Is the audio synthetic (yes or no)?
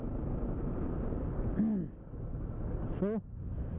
no